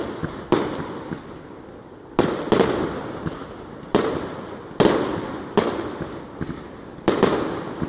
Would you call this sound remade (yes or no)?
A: no